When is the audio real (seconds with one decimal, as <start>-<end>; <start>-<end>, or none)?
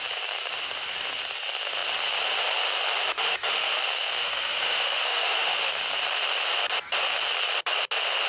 0.0-3.1; 3.8-4.2; 5.7-8.3